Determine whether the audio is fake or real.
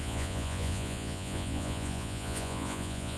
fake